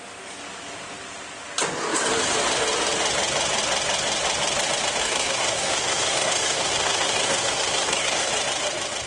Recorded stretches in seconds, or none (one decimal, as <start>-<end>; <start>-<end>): 0.0-5.0; 8.3-9.1